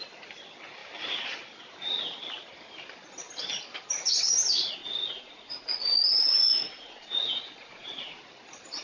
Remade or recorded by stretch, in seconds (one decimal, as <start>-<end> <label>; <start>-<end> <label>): 0.0-4.8 recorded; 4.8-8.2 remade; 8.2-8.8 recorded

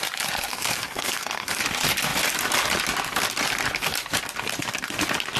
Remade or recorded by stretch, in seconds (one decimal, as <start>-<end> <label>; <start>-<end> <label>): 0.0-0.5 recorded; 0.5-1.6 remade; 1.6-5.4 recorded

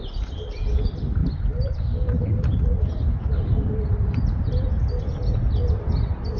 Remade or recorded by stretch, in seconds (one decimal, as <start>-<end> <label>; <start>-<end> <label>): 0.0-6.4 recorded

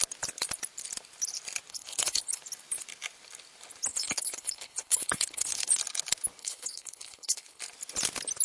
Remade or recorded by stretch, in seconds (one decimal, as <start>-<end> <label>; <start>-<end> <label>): 0.0-1.7 recorded; 1.7-2.4 remade; 2.4-3.9 recorded; 3.9-5.7 remade; 5.7-6.4 recorded; 6.4-7.6 remade; 7.6-8.4 recorded

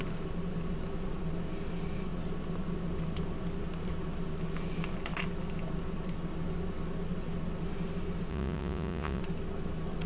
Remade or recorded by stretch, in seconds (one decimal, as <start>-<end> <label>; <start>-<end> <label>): 0.0-8.3 recorded; 8.3-9.2 remade; 9.2-10.1 recorded

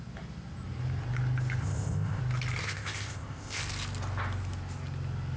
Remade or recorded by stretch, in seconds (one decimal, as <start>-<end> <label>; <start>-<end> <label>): 0.0-1.6 recorded; 1.6-2.2 remade; 2.2-2.6 recorded; 2.6-3.6 remade; 3.6-5.4 recorded